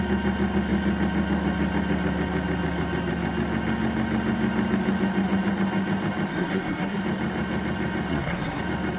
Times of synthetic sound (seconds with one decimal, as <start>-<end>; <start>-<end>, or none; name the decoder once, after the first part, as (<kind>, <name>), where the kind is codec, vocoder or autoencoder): 6.3-7.0 (codec, SNAC); 8.1-8.6

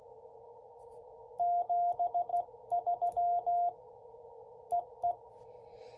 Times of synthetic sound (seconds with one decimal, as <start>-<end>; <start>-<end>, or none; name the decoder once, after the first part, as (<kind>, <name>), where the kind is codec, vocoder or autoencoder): none

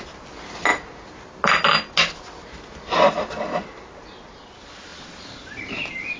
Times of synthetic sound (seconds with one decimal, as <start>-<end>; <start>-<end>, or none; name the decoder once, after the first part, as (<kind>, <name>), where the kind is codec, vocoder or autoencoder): none